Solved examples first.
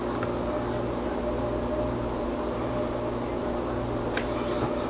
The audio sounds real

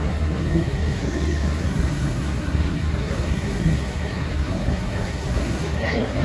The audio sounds fake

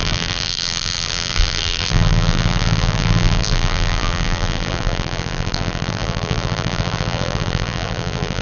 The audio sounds fake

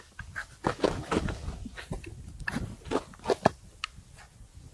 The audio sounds real